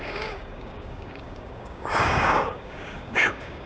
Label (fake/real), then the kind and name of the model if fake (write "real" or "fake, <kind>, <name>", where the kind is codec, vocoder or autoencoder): fake, codec, DAC